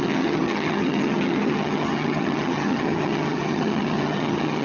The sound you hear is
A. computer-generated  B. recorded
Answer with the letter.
A